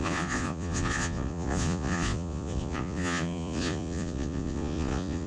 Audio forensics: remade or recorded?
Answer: remade